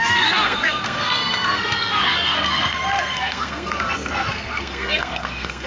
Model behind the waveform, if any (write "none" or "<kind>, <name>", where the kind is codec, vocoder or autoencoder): codec, SNAC